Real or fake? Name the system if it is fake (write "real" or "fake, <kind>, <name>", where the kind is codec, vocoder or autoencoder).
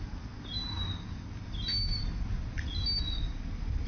real